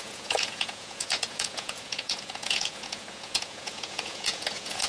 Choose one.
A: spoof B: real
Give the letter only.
A